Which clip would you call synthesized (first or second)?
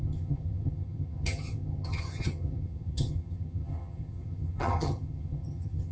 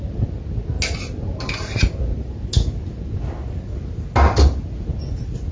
first